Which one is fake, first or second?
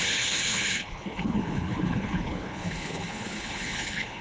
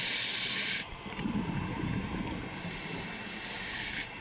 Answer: first